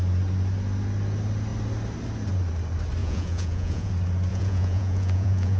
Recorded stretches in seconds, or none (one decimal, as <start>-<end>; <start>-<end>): 0.0-3.0; 3.9-4.3

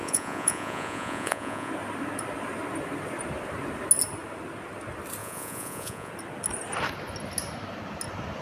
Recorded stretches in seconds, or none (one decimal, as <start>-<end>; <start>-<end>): 1.7-5.2; 6.1-8.4